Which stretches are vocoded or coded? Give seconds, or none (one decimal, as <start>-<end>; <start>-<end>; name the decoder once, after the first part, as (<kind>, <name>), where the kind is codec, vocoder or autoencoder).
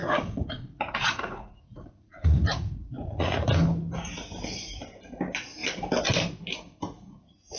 0.0-3.5 (vocoder, Vocos)